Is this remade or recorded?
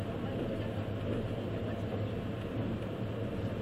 recorded